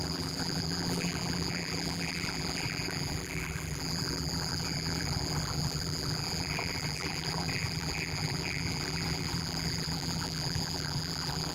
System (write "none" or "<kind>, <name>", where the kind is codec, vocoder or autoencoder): vocoder, BigVGAN v2